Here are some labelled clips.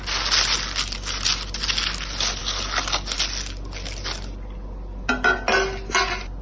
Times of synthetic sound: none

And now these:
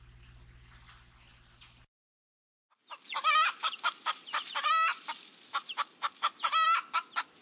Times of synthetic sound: 2.8-4.7; 5.6-6.3